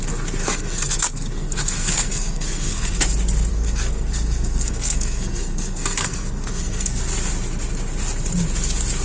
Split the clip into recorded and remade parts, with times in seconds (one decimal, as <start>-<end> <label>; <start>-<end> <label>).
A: 0.0-0.4 recorded; 0.4-3.0 remade; 3.0-3.5 recorded; 3.5-7.0 remade; 7.0-9.0 recorded